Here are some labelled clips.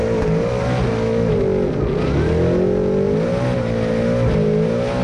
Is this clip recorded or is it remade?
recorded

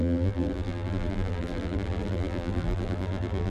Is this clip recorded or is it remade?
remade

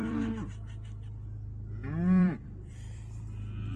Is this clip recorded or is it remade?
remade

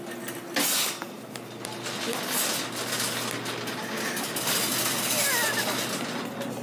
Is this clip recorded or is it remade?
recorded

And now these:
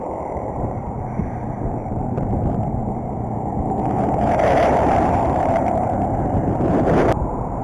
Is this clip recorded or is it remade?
remade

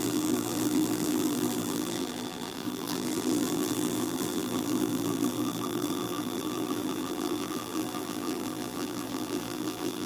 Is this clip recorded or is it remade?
remade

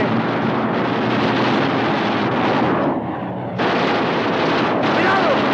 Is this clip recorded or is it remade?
recorded